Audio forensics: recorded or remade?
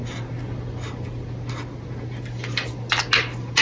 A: recorded